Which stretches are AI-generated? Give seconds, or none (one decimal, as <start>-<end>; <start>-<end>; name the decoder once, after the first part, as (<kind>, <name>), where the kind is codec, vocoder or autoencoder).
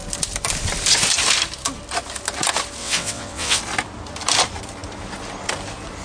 2.8-3.6 (vocoder, WaveNeXt)